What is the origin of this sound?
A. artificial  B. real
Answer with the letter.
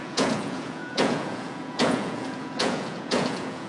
A